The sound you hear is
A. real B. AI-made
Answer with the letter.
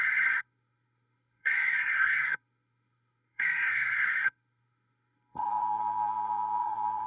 B